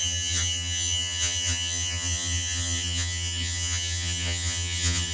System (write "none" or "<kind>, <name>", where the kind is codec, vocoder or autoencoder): vocoder, HiFi-GAN